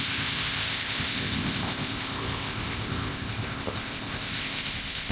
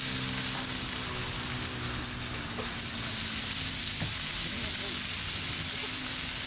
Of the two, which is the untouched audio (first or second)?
second